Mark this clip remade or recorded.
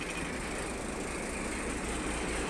recorded